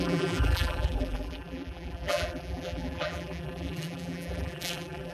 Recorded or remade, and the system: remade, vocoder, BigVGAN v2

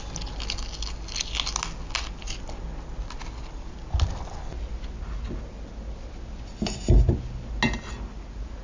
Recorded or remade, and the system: recorded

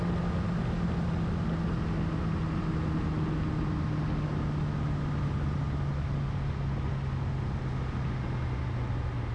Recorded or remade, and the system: recorded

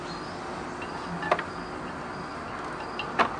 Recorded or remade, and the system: recorded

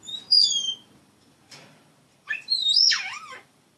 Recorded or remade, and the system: remade, vocoder, BigVGAN v2